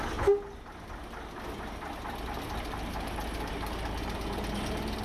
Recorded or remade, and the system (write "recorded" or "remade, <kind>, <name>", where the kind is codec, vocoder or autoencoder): recorded